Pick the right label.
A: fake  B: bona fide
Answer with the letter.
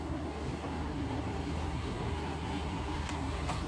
A